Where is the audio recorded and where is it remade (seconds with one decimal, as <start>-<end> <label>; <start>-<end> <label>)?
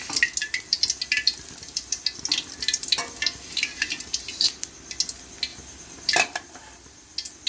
0.0-5.5 recorded; 5.5-6.5 remade; 6.5-7.5 recorded